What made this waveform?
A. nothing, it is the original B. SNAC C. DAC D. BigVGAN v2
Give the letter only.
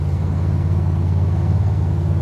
B